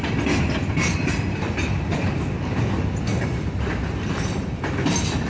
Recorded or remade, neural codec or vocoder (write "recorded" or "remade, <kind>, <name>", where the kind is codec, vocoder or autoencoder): recorded